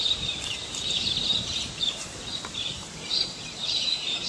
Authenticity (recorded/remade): remade